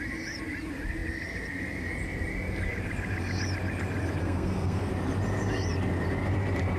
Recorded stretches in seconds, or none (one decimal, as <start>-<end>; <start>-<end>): 0.0-4.2; 4.9-6.8